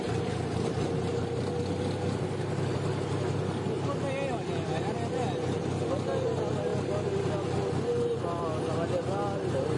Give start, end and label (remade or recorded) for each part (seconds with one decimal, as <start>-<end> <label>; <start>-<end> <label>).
0.0-9.8 recorded